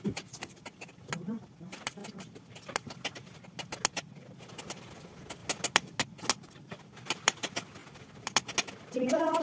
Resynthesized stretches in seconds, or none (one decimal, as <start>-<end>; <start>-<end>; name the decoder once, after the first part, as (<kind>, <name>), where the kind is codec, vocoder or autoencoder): none